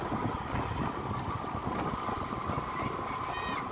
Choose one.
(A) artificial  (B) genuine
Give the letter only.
B